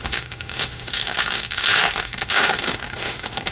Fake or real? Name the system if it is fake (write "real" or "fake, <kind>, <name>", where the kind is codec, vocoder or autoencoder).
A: fake, autoencoder, DAC-VAE